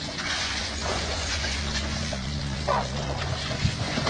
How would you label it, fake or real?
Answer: fake